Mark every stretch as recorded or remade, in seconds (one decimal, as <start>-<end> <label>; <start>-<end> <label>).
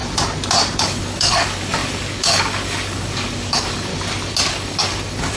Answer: 0.0-0.8 recorded; 0.8-3.9 remade; 3.9-4.5 recorded; 4.5-5.4 remade